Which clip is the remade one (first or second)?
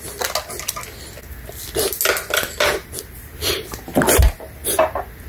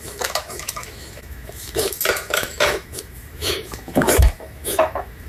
second